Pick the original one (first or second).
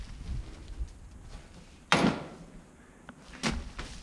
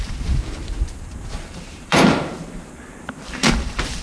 first